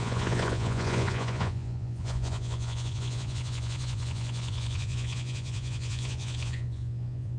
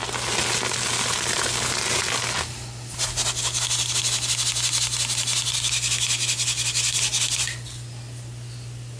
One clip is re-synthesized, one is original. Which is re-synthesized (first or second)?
first